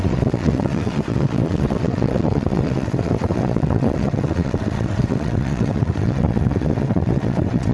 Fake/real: fake